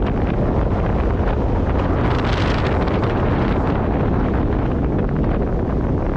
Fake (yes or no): no